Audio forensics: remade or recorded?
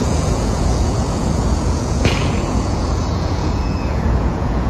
remade